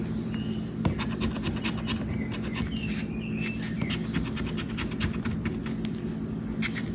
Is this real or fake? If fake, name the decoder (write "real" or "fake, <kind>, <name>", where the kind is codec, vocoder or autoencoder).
real